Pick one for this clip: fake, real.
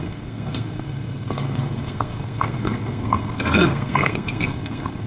fake